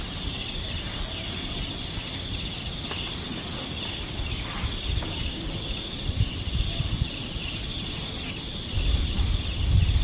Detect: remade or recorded recorded